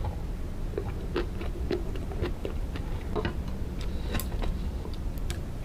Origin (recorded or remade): recorded